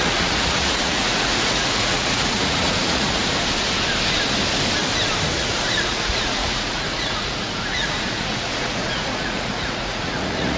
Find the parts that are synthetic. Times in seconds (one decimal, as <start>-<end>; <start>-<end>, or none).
0.0-3.2; 5.4-10.6